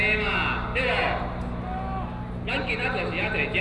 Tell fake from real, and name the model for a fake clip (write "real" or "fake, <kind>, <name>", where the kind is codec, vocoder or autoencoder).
real